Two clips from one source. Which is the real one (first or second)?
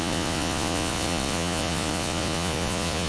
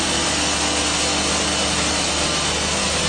second